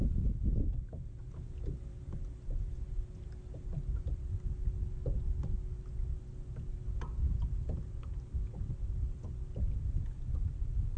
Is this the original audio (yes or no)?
yes